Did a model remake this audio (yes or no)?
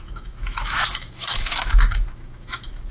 yes